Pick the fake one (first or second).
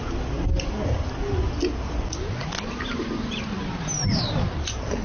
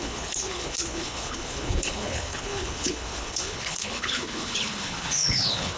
second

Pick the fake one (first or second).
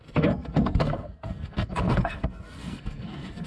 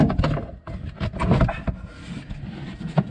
first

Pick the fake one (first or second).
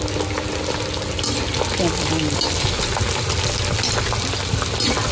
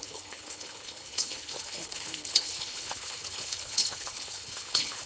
second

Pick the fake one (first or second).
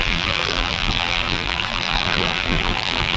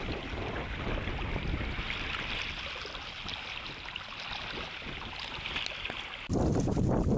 first